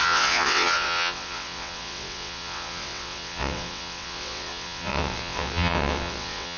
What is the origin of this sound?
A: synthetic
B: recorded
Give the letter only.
A